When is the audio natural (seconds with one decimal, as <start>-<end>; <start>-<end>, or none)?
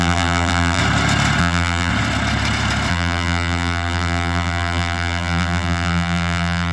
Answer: 0.8-1.4; 1.9-2.9